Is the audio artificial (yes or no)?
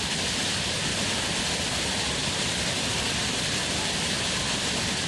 no